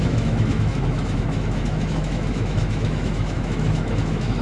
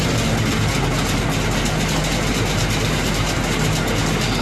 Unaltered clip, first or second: second